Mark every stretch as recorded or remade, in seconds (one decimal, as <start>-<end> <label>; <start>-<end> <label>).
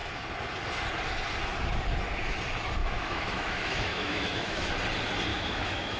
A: 0.0-2.8 recorded; 2.8-4.7 remade; 4.7-5.3 recorded; 5.3-6.0 remade